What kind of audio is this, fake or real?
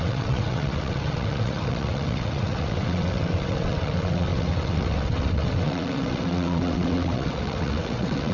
fake